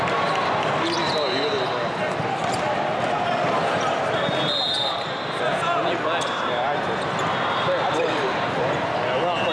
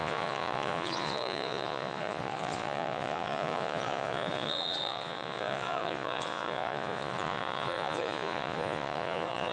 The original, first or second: first